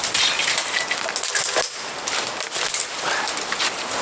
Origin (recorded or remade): recorded